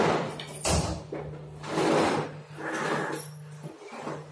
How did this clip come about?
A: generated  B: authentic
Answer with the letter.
B